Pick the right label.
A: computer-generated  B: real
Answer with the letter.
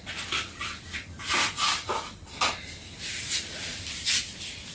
B